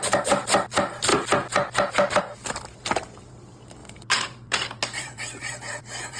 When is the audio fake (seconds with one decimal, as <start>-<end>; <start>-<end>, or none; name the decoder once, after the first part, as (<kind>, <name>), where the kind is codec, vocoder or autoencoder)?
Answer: 3.8-5.8 (vocoder, BigVGAN v2)